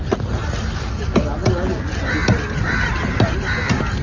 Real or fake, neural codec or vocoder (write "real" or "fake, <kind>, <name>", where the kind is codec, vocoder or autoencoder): real